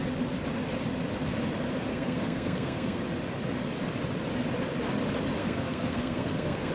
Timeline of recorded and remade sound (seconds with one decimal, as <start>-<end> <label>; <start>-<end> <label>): 0.0-1.9 recorded; 1.9-3.0 remade; 3.0-5.4 recorded; 5.4-6.7 remade